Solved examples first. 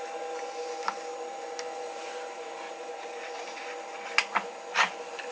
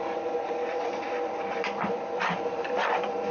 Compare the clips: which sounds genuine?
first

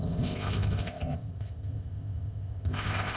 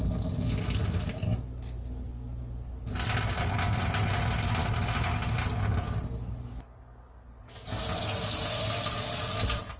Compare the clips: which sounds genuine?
second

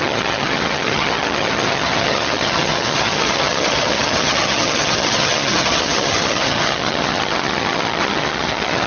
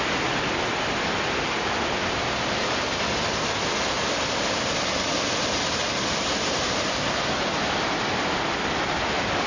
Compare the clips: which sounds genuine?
second